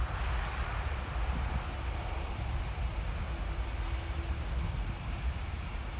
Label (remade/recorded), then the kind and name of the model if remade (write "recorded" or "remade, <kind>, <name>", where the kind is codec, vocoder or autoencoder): recorded